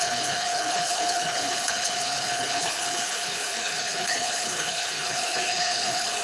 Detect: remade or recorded remade